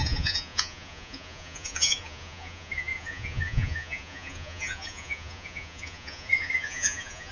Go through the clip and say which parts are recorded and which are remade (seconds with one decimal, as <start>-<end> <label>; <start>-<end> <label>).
0.0-7.3 remade